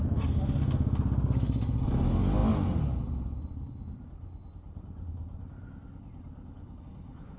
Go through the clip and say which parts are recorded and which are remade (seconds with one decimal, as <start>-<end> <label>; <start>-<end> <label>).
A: 0.0-7.4 recorded